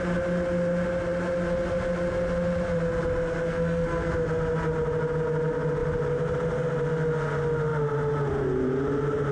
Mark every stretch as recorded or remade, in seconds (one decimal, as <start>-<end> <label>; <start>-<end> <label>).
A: 0.0-3.5 recorded; 3.5-4.1 remade; 4.1-9.3 recorded